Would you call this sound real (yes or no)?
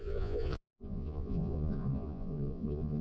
no